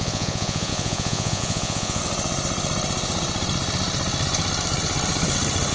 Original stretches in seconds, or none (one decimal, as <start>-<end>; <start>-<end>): 2.0-5.7

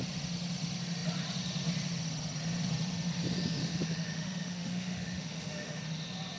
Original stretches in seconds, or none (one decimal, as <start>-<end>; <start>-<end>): 0.0-3.6; 5.8-6.4

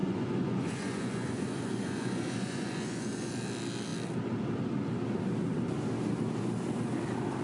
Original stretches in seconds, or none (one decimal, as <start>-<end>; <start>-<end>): 3.3-7.4

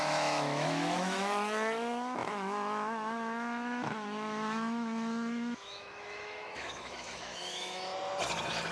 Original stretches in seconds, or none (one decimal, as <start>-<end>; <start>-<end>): 7.9-8.7

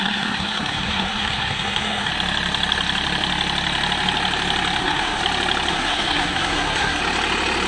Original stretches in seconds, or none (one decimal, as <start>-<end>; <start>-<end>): 2.1-4.8; 5.2-5.7; 7.0-7.7

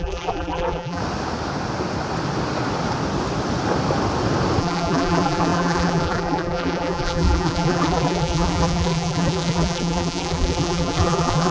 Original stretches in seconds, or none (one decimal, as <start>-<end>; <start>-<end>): 1.0-4.6

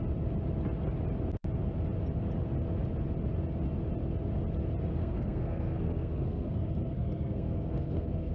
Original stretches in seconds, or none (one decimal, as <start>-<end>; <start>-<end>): 0.0-5.0